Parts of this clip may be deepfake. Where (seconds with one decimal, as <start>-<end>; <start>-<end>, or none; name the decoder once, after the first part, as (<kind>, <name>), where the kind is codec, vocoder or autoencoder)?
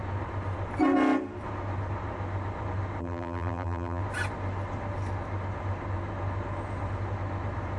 3.0-4.0 (vocoder, BigVGAN v2)